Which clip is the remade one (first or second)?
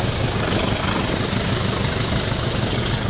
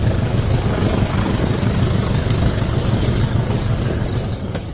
second